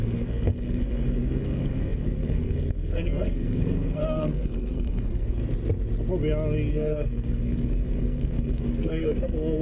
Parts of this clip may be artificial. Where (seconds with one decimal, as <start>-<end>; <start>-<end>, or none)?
0.0-5.4; 6.7-9.6